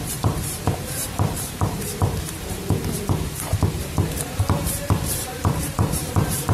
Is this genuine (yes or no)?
no